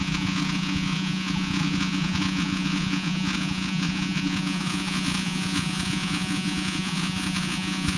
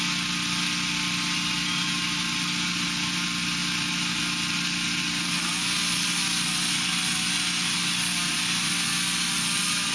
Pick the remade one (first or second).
first